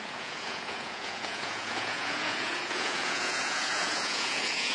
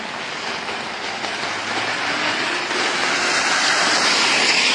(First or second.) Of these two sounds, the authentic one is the second